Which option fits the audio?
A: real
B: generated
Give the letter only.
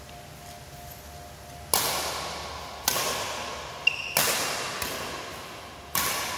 A